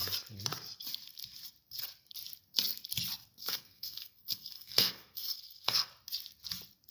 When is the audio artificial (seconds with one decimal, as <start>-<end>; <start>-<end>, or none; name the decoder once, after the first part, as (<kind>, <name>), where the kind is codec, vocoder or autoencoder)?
3.4-5.9 (codec, SNAC)

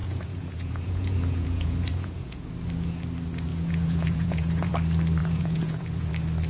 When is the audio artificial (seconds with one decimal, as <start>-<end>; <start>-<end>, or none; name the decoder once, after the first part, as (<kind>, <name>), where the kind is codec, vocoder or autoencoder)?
0.0-2.5 (vocoder, Vocos); 3.5-4.7; 5.2-6.1

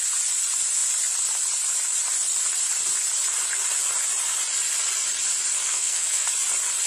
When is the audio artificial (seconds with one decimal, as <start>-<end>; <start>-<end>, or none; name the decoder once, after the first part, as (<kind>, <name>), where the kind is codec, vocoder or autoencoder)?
5.6-6.3 (codec, SNAC)